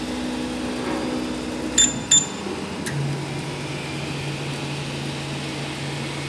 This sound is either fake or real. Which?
real